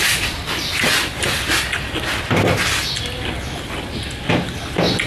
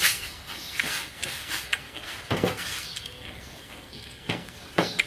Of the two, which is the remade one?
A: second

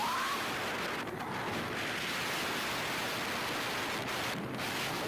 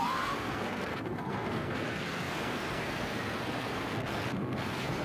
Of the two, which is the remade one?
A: second